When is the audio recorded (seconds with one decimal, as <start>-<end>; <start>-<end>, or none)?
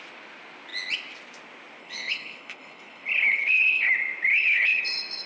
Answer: 0.0-1.8; 3.9-4.3; 4.8-5.3